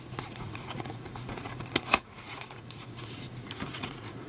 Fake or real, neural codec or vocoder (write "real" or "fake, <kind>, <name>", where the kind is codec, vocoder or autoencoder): fake, vocoder, Vocos